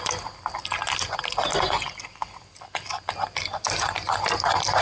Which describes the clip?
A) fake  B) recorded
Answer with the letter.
B